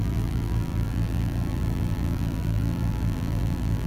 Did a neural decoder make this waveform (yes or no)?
yes